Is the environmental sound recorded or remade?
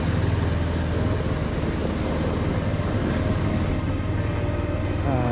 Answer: recorded